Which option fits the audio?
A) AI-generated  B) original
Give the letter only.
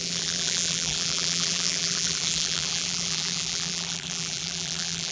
A